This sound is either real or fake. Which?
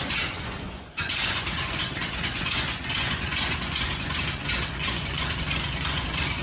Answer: fake